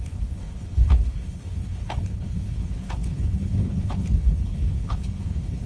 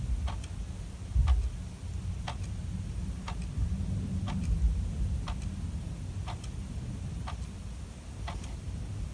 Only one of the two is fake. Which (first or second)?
first